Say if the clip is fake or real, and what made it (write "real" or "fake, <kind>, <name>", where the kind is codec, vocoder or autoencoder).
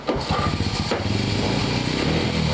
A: real